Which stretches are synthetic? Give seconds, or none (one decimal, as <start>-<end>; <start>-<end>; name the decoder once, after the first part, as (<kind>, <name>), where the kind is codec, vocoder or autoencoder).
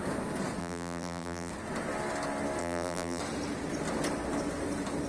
0.6-1.5 (vocoder, BigVGAN v2); 2.6-3.2